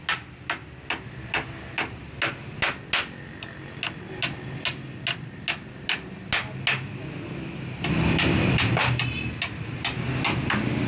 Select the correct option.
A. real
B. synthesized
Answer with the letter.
A